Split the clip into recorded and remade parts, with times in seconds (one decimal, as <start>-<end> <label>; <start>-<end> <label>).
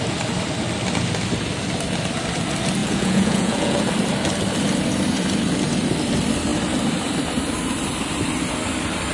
0.0-2.8 recorded; 2.8-3.8 remade; 3.8-9.1 recorded